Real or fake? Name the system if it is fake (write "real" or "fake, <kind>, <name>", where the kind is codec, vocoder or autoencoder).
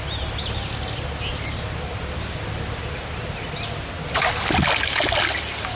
real